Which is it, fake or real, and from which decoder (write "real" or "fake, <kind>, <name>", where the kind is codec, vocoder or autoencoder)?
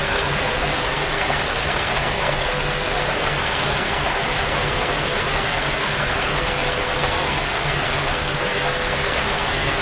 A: fake, codec, SNAC